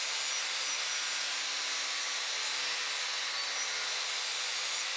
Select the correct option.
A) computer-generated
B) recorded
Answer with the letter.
B